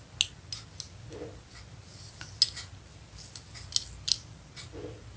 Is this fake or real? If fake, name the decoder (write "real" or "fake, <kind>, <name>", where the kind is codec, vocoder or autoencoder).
real